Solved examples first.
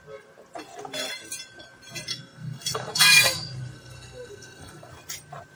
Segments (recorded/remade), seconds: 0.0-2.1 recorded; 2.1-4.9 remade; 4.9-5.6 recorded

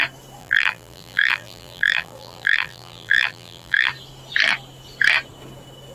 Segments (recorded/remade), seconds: 0.0-0.4 recorded; 0.4-3.9 remade; 3.9-5.9 recorded

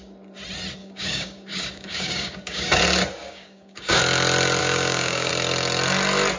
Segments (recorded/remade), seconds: 0.0-0.8 recorded; 0.8-2.7 remade; 2.7-3.2 recorded; 3.2-4.0 remade; 4.0-4.6 recorded; 4.6-5.3 remade; 5.3-6.4 recorded

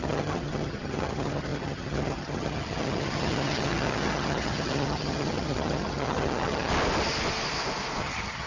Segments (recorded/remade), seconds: 0.0-6.7 remade; 6.7-8.0 recorded; 8.0-8.5 remade